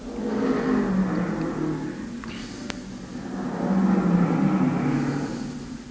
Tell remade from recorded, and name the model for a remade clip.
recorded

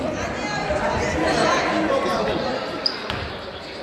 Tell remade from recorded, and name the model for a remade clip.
recorded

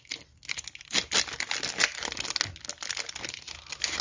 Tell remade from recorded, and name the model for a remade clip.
recorded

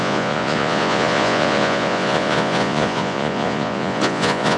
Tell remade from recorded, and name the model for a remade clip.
remade, vocoder, Vocos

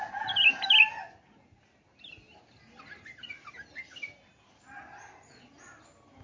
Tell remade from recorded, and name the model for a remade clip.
recorded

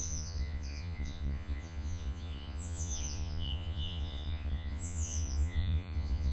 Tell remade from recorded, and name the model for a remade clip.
remade, vocoder, Vocos